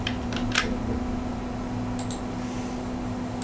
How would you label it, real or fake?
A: real